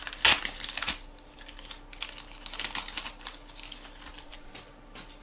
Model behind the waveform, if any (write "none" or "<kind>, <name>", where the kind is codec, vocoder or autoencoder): none